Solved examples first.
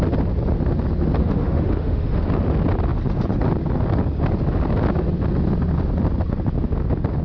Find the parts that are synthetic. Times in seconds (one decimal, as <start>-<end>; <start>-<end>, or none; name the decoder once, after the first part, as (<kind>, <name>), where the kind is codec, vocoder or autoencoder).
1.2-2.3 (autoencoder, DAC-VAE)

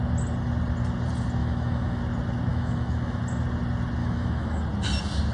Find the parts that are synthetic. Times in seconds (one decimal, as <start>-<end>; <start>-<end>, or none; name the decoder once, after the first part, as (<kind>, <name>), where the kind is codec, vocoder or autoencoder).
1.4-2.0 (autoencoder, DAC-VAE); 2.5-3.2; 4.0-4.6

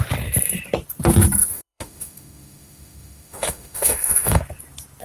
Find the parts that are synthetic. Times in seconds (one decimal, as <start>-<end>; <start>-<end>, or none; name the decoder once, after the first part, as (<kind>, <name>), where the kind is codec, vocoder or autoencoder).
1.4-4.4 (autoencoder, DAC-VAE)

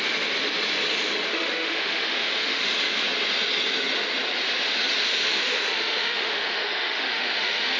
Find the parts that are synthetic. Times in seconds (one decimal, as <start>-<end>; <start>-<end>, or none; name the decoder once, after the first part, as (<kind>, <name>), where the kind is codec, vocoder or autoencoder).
1.3-2.7 (autoencoder, DAC-VAE); 5.0-7.8

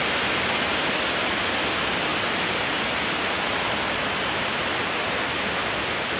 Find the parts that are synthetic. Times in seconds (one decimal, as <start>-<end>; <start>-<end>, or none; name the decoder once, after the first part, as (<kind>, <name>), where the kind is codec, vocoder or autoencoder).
none

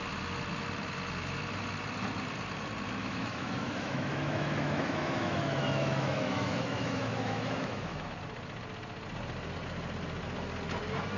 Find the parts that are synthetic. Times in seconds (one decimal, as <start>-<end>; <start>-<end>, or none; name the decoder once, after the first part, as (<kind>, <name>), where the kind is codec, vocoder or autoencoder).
3.0-8.2 (autoencoder, DAC-VAE)